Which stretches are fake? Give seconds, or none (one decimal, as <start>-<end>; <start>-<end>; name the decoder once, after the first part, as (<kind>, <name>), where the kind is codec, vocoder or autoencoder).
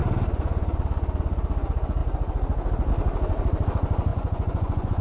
4.1-5.0 (vocoder, Vocos)